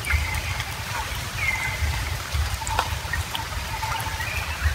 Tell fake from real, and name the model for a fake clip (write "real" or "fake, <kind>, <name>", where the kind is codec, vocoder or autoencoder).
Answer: real